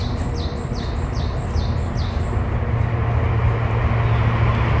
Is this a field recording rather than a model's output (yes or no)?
yes